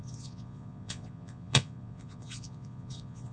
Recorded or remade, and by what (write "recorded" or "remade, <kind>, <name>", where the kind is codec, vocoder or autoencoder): remade, vocoder, Vocos